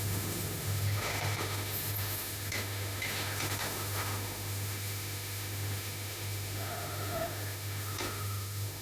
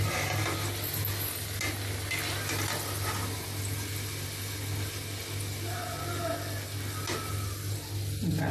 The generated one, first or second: first